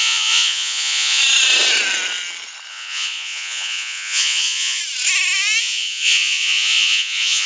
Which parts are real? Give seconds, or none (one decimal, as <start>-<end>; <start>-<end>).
1.2-2.7; 4.8-5.6